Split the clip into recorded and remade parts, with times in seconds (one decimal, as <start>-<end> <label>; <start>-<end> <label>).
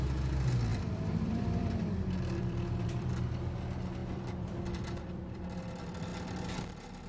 0.0-0.7 recorded; 0.7-3.3 remade; 3.3-4.0 recorded; 4.0-5.4 remade; 5.4-7.1 recorded